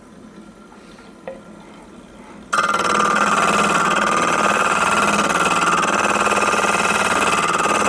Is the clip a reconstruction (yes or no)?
no